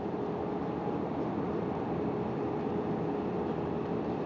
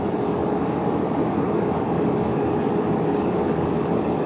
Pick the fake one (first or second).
second